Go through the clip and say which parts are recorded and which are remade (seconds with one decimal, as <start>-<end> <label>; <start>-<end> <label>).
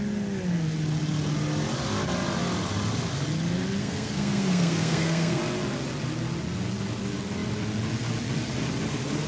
0.0-3.8 recorded; 3.8-5.4 remade; 5.4-9.3 recorded